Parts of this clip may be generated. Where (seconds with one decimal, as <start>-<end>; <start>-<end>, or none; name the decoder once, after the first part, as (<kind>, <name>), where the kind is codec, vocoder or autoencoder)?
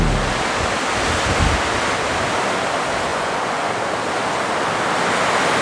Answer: 3.1-3.7 (vocoder, Vocos)